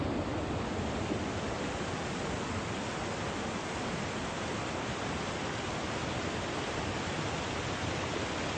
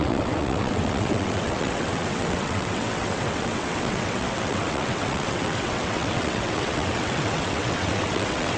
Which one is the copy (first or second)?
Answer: second